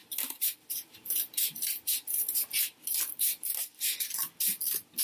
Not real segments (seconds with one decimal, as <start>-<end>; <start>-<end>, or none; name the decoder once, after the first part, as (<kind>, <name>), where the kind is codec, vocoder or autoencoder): none